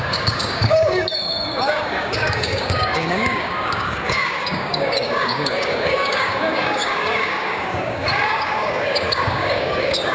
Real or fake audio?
fake